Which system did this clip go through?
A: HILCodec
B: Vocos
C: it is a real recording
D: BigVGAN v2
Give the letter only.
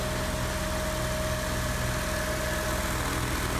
C